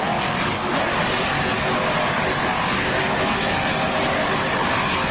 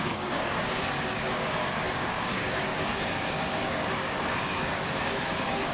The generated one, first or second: second